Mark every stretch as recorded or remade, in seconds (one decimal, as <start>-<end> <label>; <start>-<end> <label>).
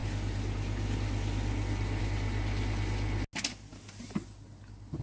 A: 0.0-5.0 recorded